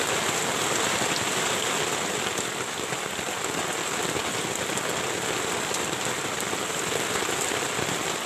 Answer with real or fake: real